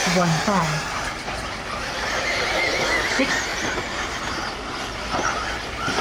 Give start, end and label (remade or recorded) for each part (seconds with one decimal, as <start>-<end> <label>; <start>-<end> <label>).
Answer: 0.0-2.6 remade; 2.6-3.5 recorded; 3.5-4.2 remade; 4.2-6.0 recorded